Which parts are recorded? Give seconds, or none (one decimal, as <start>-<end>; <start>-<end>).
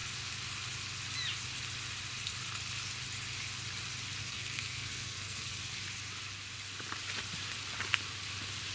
0.0-4.2; 5.6-8.7